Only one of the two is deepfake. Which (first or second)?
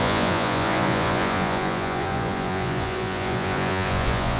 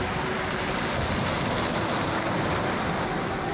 first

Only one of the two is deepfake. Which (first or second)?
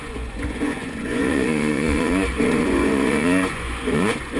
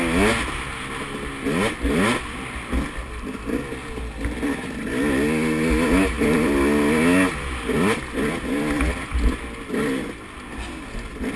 first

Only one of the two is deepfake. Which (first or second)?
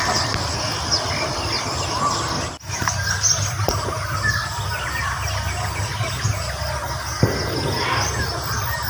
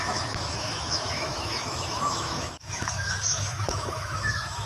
second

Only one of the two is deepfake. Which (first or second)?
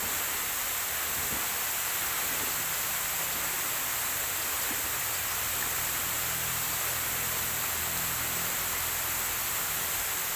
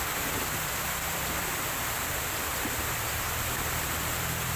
second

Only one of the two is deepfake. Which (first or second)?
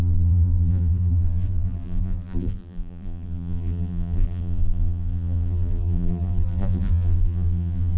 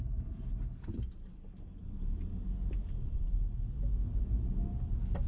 first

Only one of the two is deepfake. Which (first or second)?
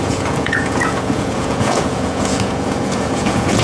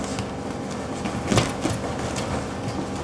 first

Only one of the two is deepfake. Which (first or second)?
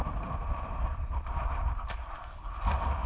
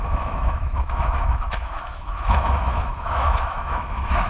second